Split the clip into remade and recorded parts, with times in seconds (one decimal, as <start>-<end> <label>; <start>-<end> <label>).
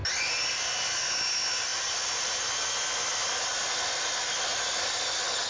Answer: 0.0-5.5 recorded